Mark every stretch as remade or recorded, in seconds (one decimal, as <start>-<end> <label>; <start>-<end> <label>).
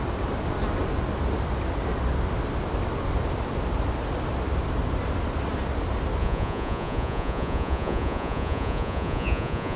0.0-6.2 recorded; 6.2-9.8 remade